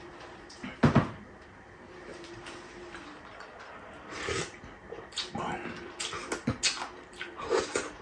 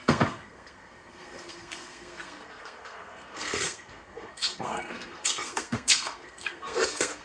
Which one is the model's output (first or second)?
second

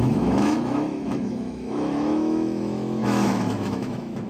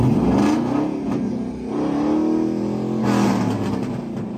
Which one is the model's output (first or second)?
first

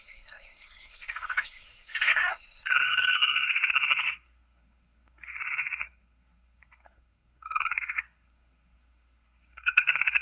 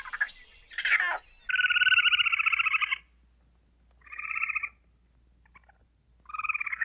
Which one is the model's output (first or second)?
first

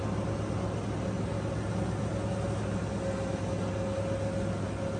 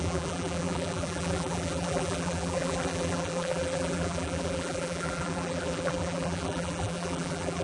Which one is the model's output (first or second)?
second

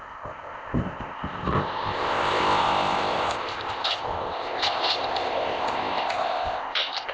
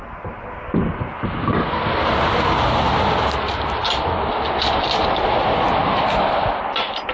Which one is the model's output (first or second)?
first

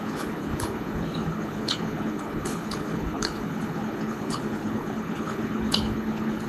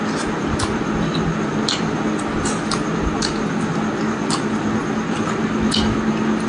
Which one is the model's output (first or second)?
first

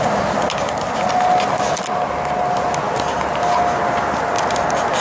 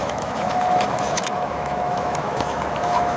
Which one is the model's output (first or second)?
second